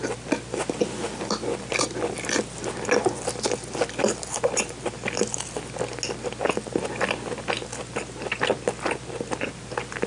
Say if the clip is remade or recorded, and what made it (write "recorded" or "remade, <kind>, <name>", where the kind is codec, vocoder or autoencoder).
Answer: recorded